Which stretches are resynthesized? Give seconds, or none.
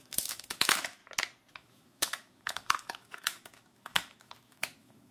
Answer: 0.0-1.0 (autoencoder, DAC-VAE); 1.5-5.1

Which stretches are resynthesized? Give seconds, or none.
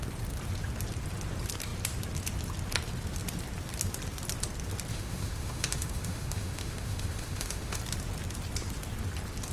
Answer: 4.9-7.8 (autoencoder, DAC-VAE)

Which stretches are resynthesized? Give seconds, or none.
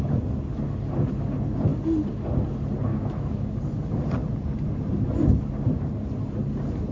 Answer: 2.9-3.6 (autoencoder, DAC-VAE)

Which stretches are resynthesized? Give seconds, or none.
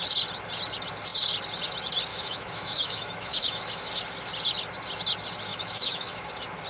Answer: 2.1-3.9 (autoencoder, DAC-VAE); 5.5-6.3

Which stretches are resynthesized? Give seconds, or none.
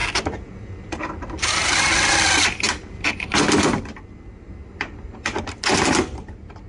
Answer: none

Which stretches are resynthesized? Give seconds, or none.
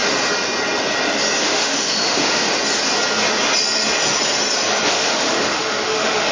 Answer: 1.4-2.5 (autoencoder, DAC-VAE); 4.9-6.3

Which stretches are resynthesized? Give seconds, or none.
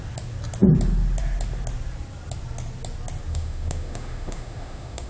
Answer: 3.3-5.1 (autoencoder, DAC-VAE)